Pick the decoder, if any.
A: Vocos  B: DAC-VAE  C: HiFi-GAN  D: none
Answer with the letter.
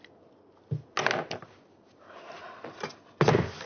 D